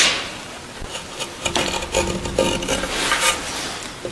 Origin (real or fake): real